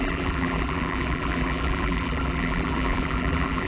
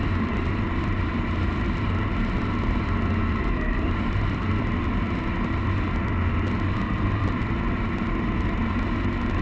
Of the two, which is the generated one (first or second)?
first